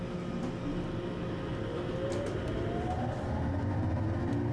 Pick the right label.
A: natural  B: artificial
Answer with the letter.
A